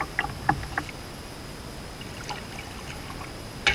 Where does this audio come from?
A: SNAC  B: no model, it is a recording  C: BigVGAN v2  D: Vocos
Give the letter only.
B